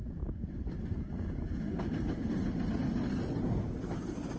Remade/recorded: recorded